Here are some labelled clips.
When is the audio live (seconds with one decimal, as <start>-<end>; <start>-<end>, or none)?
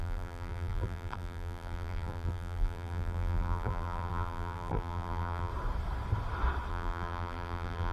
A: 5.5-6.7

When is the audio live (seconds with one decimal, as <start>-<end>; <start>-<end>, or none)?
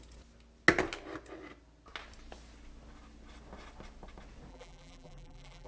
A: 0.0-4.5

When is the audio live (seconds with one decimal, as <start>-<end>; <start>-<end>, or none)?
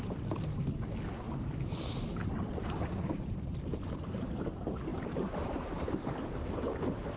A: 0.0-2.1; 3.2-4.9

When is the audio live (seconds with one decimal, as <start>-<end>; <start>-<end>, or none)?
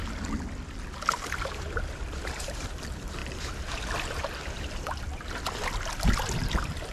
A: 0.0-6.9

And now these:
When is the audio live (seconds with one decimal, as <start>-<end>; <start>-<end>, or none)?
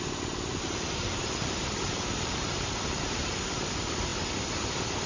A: 0.0-0.5; 3.2-5.1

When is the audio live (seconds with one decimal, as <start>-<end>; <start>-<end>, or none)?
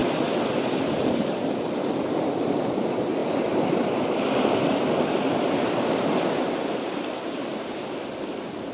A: 0.0-0.8